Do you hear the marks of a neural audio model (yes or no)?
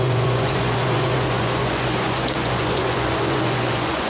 yes